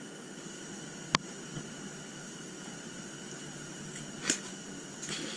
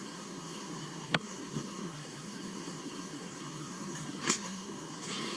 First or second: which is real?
first